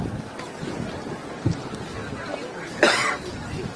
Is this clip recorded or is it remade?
recorded